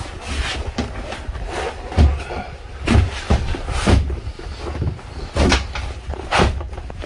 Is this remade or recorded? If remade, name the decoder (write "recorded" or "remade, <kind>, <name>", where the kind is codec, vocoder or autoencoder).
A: recorded